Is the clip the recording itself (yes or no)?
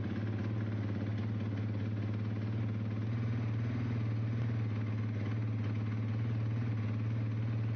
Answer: yes